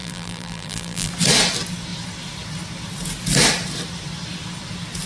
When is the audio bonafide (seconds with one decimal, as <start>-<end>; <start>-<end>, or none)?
1.1-5.1